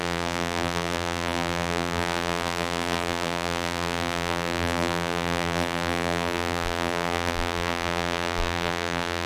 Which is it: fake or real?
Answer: fake